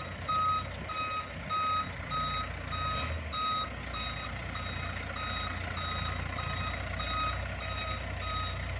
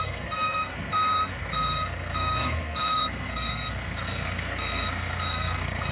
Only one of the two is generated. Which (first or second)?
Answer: second